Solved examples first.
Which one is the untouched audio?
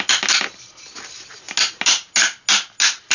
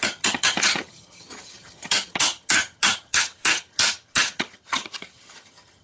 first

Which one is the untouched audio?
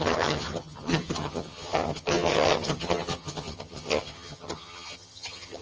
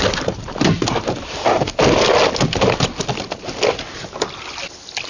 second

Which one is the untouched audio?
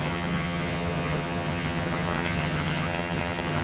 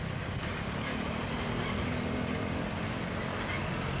second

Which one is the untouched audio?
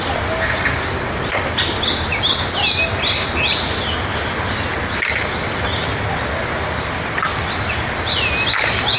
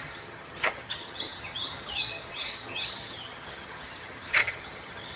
first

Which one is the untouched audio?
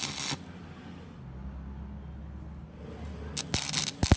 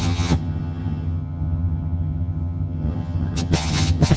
first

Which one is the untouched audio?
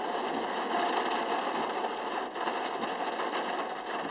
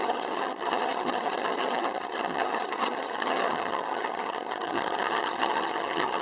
first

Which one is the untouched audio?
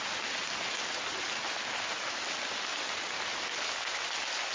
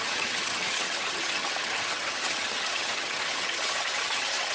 first